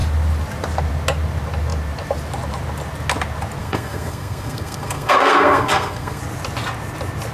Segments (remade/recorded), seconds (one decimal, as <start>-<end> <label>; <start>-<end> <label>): 0.0-3.6 recorded; 3.6-6.2 remade; 6.2-7.3 recorded